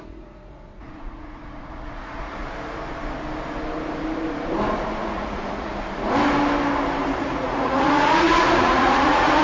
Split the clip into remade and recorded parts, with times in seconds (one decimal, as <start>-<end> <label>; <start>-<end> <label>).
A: 0.0-2.4 remade; 2.4-5.0 recorded; 5.0-5.7 remade; 5.7-7.2 recorded; 7.2-9.4 remade